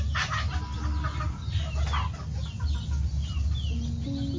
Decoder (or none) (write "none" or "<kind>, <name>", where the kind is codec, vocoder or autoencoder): none